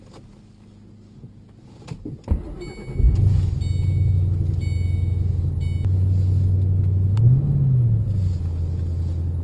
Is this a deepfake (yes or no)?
no